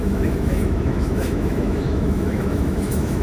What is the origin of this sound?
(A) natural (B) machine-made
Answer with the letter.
B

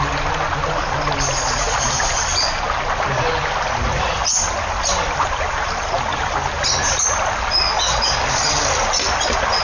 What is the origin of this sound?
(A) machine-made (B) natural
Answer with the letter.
B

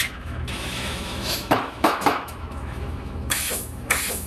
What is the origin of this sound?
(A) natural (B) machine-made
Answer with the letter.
B